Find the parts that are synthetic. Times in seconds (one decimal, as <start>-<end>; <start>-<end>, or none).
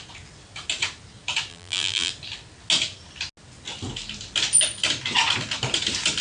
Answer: 1.5-2.1